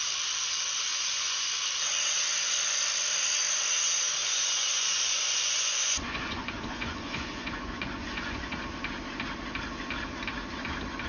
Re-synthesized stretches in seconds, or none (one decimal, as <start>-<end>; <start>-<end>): 0.9-1.5; 4.2-8.6